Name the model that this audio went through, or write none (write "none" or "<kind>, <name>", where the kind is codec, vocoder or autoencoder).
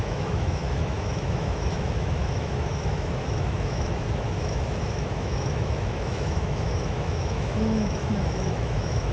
autoencoder, DAC-VAE